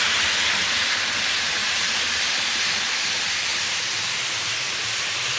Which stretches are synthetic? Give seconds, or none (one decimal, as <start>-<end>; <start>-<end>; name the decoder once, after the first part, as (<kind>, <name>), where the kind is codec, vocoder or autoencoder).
none